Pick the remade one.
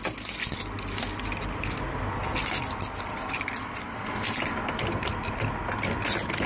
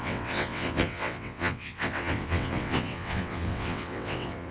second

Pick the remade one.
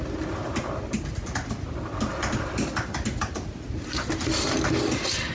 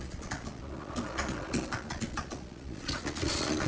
second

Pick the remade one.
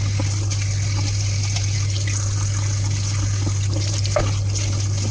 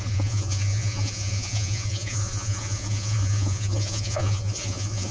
second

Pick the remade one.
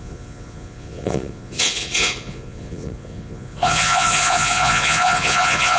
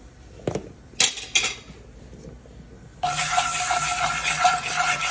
first